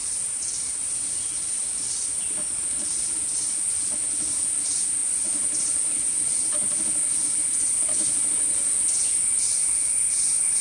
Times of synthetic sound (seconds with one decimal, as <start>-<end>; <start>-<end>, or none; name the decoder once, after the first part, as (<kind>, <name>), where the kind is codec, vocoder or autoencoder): 0.0-1.9 (vocoder, BigVGAN v2); 5.0-5.9; 7.2-8.6